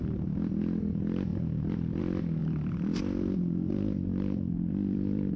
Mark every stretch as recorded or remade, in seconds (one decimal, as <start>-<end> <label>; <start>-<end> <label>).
0.0-1.3 recorded; 1.3-2.0 remade; 2.0-2.4 recorded; 2.4-5.4 remade